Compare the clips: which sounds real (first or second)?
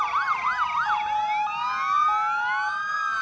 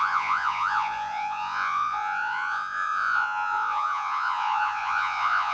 first